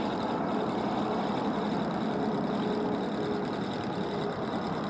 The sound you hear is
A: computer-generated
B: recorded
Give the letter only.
B